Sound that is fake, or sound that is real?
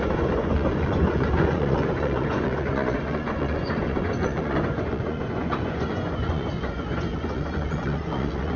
fake